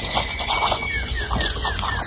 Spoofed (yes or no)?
yes